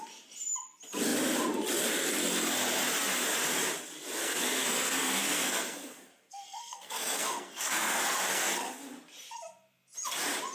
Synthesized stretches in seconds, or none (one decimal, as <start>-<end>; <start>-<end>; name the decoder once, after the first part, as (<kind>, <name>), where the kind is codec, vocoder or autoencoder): 4.2-8.8 (codec, SNAC)